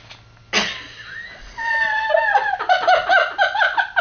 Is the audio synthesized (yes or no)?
no